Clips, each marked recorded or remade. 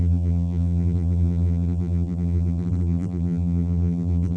remade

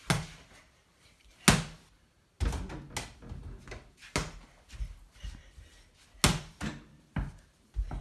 recorded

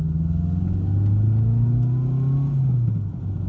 recorded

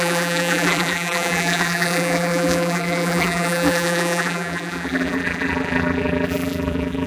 remade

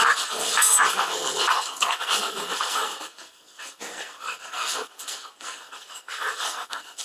remade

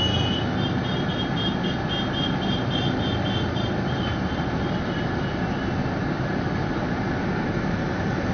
recorded